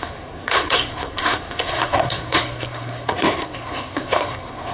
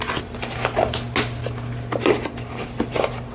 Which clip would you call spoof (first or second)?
first